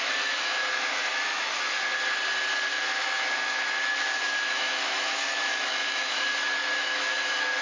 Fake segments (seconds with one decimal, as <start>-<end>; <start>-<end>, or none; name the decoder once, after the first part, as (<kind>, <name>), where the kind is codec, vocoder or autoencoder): 0.0-1.5 (autoencoder, DAC-VAE); 2.7-7.6